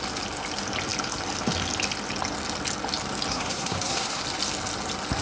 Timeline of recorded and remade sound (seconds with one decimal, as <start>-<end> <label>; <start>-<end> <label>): 0.0-3.3 recorded; 3.3-4.2 remade; 4.2-5.2 recorded